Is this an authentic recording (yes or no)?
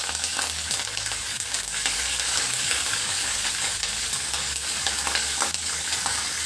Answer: no